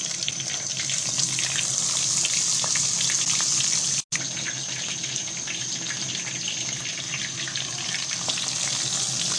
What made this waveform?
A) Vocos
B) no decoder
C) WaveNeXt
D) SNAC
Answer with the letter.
B